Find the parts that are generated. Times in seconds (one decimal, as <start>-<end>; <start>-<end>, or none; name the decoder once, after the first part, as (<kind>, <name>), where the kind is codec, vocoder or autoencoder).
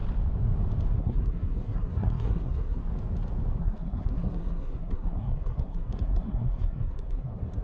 1.0-2.8 (codec, SNAC); 3.6-7.6